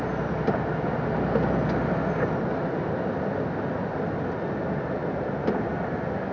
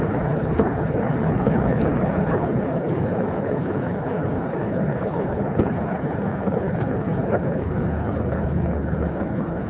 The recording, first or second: first